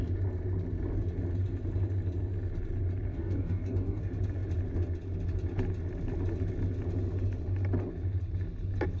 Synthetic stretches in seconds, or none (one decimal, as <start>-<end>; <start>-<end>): 3.1-4.0

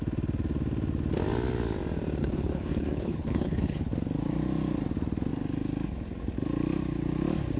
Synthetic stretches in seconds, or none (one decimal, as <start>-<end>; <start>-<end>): 2.2-3.9